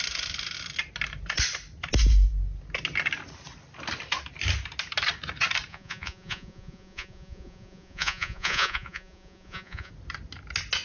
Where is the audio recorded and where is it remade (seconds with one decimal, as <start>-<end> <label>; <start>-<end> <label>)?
0.0-5.7 recorded; 5.7-9.9 remade; 9.9-10.8 recorded